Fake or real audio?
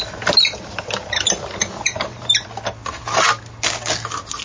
real